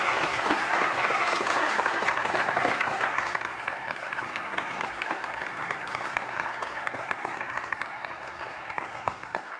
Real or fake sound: fake